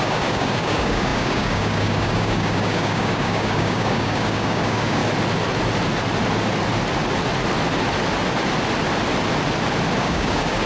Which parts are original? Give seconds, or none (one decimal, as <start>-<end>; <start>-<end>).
5.0-10.0